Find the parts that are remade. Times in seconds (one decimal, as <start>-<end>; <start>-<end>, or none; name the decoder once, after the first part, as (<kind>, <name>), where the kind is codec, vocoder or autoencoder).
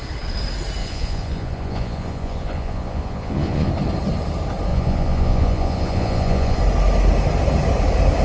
0.8-3.7 (vocoder, Vocos); 4.7-6.6